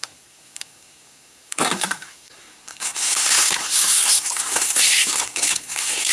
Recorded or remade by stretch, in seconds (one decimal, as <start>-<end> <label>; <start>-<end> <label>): 0.0-6.1 remade